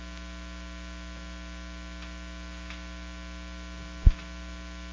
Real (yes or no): yes